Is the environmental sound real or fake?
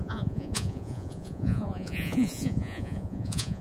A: fake